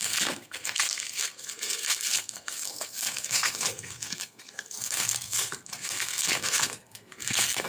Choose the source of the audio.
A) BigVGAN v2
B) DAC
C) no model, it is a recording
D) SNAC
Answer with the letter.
D